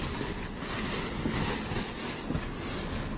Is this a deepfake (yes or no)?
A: no